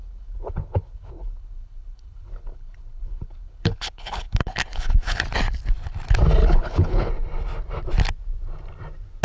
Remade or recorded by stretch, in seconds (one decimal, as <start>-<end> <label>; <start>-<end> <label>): 0.0-5.2 remade; 5.2-6.4 recorded; 6.4-7.1 remade; 7.1-9.2 recorded